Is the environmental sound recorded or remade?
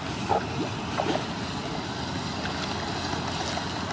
recorded